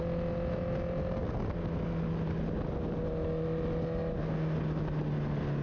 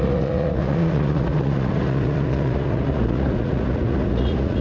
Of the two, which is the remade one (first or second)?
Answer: second